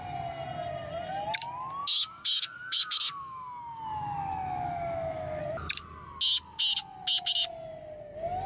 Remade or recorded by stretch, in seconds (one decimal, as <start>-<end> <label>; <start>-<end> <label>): 0.0-1.8 recorded; 1.8-5.4 remade; 5.4-8.5 recorded